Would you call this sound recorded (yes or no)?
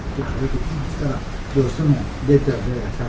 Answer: yes